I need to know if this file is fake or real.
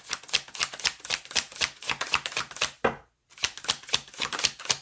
real